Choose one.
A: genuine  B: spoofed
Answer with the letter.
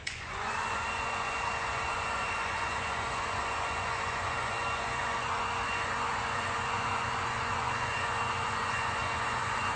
B